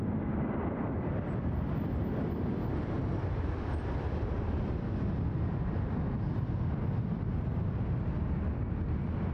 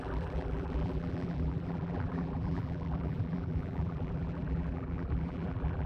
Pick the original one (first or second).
first